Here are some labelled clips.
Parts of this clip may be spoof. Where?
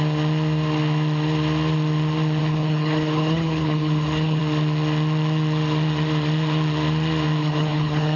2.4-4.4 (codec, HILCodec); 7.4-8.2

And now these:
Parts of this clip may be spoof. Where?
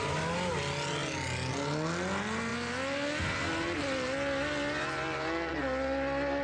none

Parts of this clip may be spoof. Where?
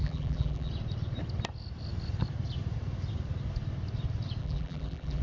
0.0-0.7 (vocoder, BigVGAN v2); 4.4-5.2